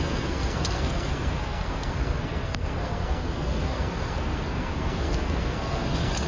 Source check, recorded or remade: remade